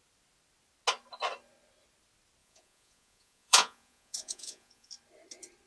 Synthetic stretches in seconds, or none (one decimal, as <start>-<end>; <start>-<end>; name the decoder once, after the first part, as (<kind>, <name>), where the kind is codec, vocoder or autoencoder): 2.4-4.9 (vocoder, Vocos)